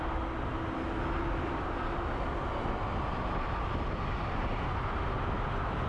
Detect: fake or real real